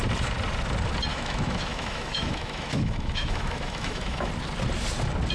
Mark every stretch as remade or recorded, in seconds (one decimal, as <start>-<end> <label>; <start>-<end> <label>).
0.0-1.1 recorded; 1.1-4.3 remade; 4.3-5.3 recorded